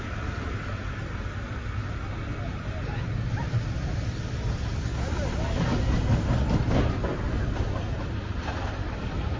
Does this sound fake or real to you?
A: real